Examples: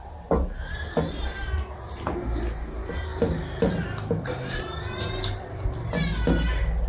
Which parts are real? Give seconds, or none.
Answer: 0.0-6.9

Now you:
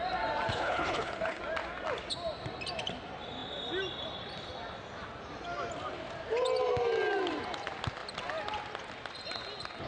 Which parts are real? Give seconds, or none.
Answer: 0.0-0.5; 1.4-9.9

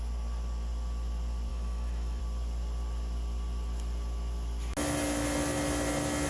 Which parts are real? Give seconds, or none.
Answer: 0.0-1.5; 2.2-6.3

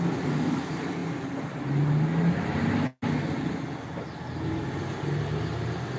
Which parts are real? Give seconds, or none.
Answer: 0.0-6.0

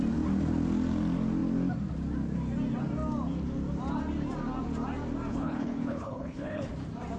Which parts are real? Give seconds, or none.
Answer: 0.0-5.3; 6.7-7.2